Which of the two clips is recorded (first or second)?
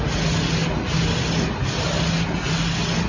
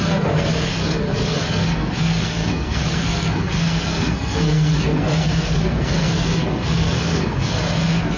first